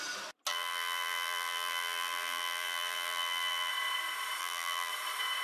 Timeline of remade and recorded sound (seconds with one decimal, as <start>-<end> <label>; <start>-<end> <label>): 0.0-0.5 recorded; 0.5-3.7 remade; 3.7-4.4 recorded; 4.4-4.9 remade; 4.9-5.4 recorded